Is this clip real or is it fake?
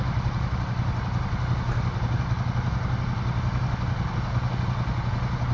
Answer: real